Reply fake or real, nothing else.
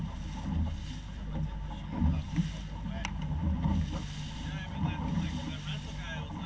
real